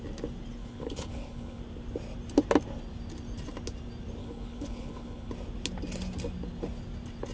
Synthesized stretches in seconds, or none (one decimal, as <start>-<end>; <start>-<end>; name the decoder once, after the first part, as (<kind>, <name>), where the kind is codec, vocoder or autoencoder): 0.6-1.6 (codec, HILCodec); 4.2-5.3